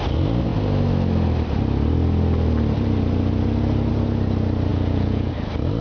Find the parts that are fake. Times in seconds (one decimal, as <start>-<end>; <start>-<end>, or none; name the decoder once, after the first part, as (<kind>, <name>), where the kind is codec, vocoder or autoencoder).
4.7-5.3 (vocoder, Vocos)